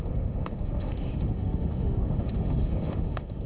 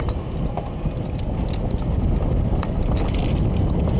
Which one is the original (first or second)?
second